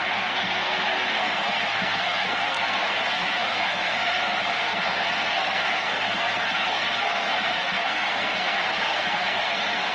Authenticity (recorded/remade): remade